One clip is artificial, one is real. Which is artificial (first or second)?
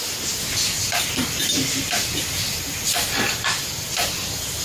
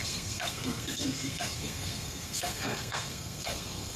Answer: second